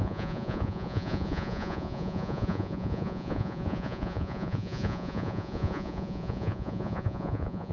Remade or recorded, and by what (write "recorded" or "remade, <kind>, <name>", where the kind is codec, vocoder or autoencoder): remade, vocoder, Vocos